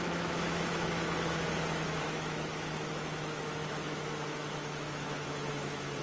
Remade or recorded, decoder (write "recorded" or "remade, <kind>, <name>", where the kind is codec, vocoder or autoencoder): remade, autoencoder, DAC-VAE